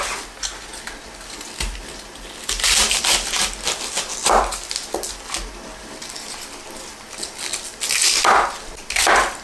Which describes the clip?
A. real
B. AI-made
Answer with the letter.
A